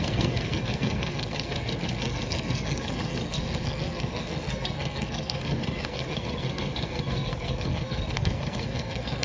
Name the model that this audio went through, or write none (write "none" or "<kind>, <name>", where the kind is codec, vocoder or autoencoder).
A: codec, SNAC